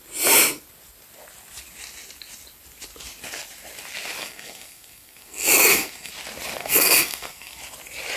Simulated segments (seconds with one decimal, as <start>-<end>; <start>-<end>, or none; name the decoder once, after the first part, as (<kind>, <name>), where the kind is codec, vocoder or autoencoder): 4.2-6.1 (codec, SNAC); 6.6-7.6